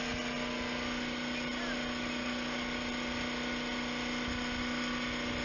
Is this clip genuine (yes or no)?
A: yes